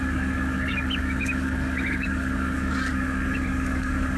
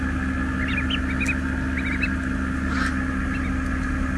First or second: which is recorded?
second